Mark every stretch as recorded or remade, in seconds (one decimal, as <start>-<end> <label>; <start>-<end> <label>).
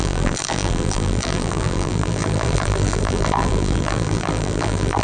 0.0-5.0 remade